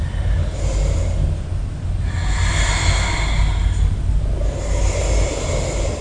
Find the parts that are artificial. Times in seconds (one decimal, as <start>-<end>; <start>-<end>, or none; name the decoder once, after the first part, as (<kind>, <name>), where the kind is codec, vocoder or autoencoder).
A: none